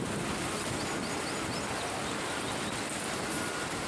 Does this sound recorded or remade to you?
recorded